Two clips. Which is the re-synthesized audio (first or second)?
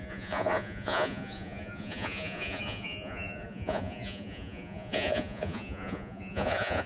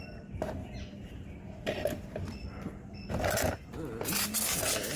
first